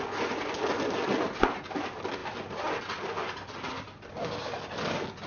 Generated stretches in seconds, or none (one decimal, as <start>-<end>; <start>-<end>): none